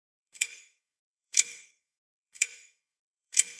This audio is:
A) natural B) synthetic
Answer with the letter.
B